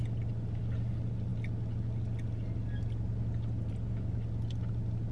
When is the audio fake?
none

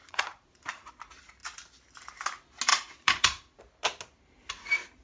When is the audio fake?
0.0-0.9 (vocoder, Vocos); 2.7-3.6

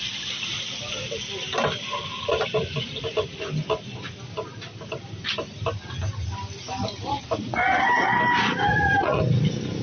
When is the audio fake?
8.7-9.2 (vocoder, Vocos)

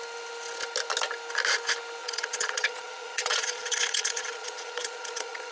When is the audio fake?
2.0-5.5 (vocoder, Vocos)

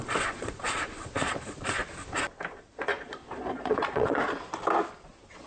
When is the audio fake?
0.0-1.8 (vocoder, Vocos); 2.5-4.2; 5.1-5.5

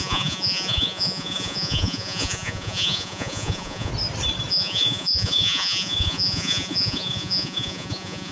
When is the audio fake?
0.0-3.9 (vocoder, Vocos); 4.5-8.3

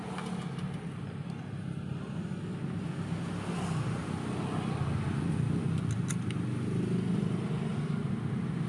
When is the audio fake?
none